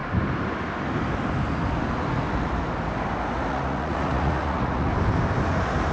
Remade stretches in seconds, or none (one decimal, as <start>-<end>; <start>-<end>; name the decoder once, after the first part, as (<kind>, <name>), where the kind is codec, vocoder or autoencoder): 3.5-4.9 (vocoder, Vocos)